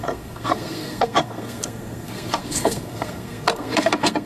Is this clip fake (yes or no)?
yes